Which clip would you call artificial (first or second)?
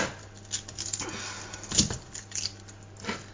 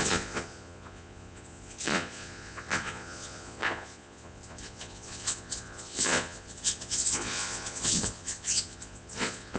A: second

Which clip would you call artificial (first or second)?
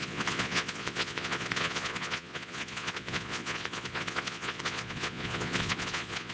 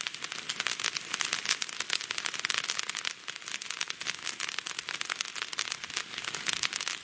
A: first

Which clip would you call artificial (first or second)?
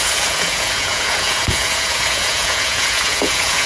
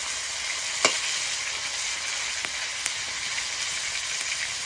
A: first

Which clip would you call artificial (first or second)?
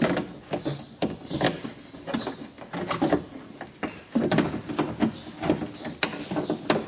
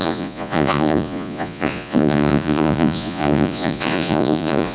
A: second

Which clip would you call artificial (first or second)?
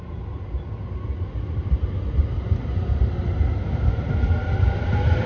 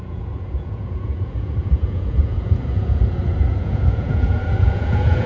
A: second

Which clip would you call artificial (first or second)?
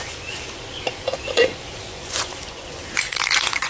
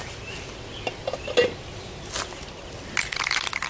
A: first